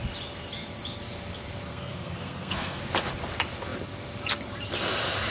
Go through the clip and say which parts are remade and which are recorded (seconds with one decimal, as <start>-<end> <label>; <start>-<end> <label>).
0.0-1.7 recorded; 1.7-2.8 remade; 2.8-5.3 recorded